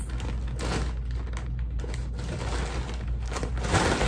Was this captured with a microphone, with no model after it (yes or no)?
yes